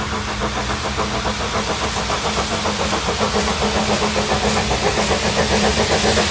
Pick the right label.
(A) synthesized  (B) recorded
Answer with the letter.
B